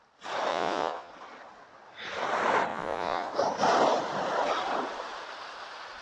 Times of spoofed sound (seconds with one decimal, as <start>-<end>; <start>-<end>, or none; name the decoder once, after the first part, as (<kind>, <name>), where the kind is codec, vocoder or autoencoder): 0.5-1.1 (vocoder, Vocos); 2.7-3.3